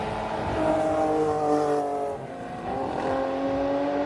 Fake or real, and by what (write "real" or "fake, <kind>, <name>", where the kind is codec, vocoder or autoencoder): real